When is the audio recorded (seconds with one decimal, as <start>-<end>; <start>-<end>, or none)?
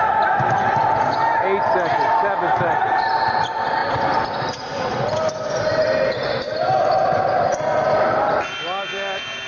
0.0-9.5